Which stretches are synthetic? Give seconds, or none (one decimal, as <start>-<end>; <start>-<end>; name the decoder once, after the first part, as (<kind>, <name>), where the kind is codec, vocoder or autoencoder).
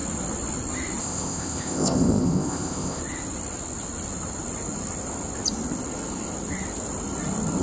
1.0-3.0 (codec, ZipCodec)